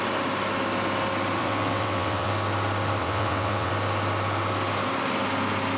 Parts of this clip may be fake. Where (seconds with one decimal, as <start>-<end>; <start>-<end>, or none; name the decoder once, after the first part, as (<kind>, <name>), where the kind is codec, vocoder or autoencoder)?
1.4-2.3 (vocoder, WaveNeXt); 3.0-3.7